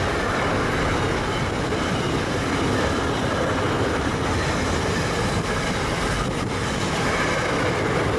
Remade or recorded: recorded